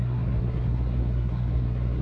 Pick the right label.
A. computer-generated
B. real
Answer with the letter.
A